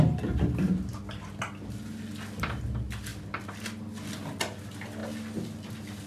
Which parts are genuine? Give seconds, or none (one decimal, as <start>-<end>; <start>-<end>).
0.0-6.1